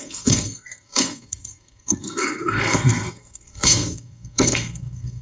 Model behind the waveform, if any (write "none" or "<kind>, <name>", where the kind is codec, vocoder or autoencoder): codec, SNAC